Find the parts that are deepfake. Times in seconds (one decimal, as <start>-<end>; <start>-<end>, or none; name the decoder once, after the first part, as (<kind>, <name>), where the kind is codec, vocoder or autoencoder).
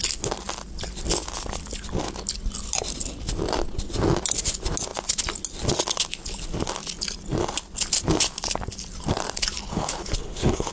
9.6-10.7 (codec, HILCodec)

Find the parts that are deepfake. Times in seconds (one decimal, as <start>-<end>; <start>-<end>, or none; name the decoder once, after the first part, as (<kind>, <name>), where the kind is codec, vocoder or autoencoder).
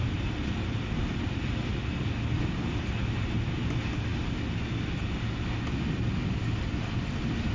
1.7-2.2 (vocoder, BigVGAN v2)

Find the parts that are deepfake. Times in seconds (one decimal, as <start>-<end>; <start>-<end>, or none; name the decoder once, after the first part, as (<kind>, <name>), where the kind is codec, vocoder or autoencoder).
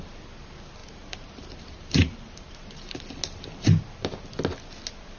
0.8-3.0 (vocoder, BigVGAN v2)